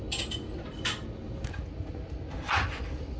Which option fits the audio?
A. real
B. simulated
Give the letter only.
A